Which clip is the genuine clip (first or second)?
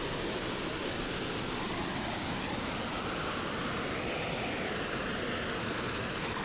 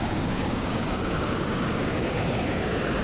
first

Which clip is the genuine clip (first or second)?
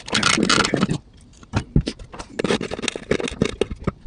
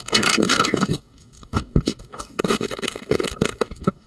first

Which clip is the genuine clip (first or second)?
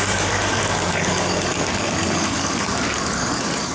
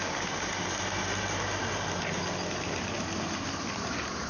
second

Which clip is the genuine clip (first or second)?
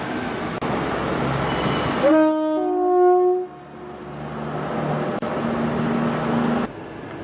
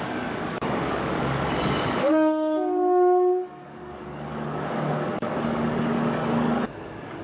first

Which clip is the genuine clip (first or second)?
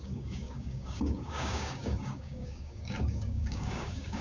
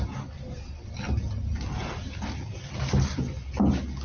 second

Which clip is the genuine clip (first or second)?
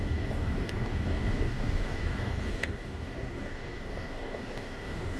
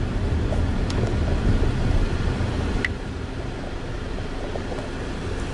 second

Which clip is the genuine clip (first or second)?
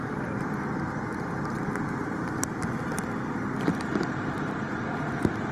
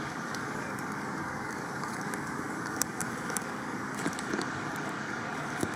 first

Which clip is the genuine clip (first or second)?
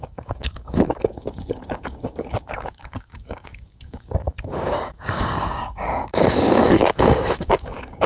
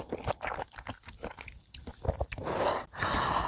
second